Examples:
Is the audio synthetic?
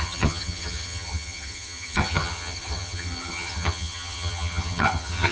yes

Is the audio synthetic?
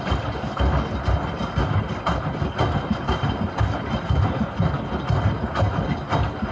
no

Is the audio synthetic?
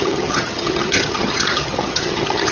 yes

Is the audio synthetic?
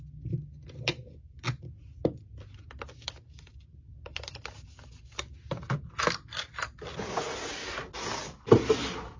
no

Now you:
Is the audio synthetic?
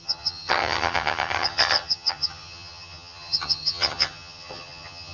yes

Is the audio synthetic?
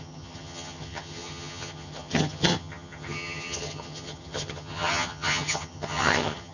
yes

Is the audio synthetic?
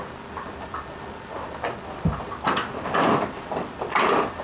no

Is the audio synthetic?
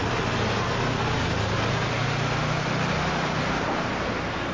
no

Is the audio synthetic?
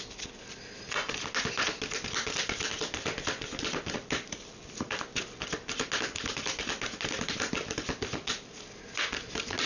no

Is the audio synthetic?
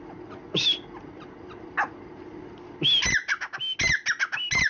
no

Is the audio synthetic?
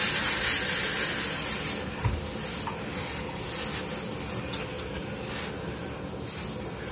no